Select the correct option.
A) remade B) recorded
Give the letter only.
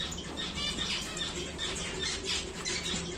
B